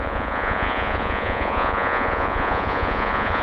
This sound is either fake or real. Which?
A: fake